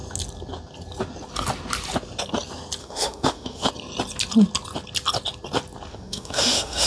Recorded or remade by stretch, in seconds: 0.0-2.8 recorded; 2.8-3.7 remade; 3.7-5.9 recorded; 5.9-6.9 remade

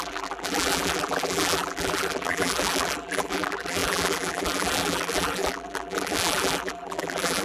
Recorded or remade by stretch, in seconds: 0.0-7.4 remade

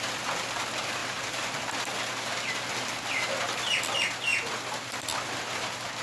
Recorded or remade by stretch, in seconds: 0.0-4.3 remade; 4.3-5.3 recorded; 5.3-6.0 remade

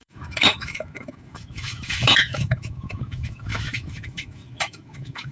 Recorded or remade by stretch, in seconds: 0.0-5.3 remade

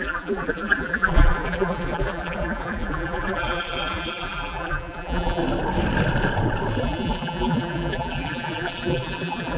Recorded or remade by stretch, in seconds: 0.0-5.4 remade; 5.4-6.8 recorded; 6.8-9.6 remade